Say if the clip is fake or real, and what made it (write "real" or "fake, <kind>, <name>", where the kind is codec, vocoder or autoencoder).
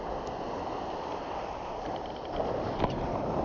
real